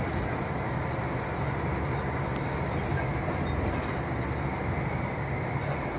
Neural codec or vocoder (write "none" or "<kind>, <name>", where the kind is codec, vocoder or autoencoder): none